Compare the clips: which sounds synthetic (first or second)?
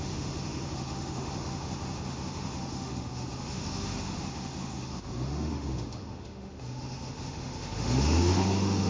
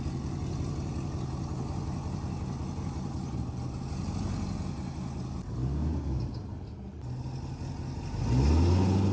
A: first